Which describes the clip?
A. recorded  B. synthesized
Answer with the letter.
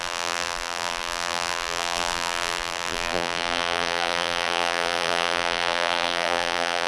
B